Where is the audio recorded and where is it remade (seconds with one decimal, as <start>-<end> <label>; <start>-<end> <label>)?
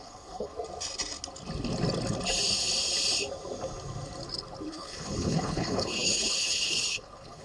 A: 0.0-0.5 remade; 0.5-4.7 recorded; 4.7-7.4 remade